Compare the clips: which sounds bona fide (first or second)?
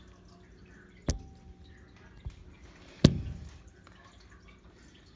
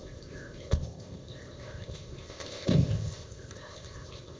first